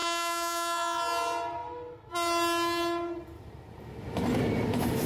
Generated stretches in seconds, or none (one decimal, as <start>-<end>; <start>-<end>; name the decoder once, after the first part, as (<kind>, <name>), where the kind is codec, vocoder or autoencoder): 0.0-1.0 (autoencoder, DAC-VAE)